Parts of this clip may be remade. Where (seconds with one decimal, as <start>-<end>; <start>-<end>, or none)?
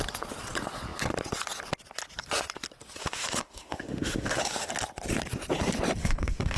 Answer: 3.0-4.7; 6.0-6.6